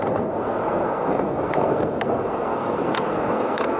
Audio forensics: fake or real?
fake